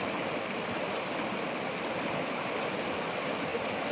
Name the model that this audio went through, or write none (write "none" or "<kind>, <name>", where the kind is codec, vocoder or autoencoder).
none